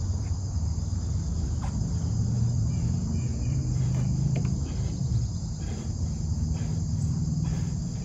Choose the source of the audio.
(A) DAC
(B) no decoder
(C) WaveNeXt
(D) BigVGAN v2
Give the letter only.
D